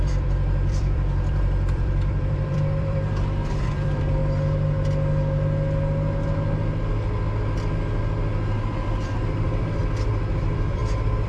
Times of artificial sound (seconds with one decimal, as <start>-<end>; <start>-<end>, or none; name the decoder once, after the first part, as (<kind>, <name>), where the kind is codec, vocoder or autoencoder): 0.0-4.2 (vocoder, BigVGAN v2); 9.1-9.8; 10.3-10.8